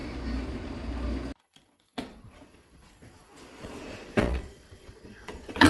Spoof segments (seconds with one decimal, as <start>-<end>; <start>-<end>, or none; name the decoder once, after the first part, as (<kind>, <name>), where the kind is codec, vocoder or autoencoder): 1.4-5.7 (vocoder, Vocos)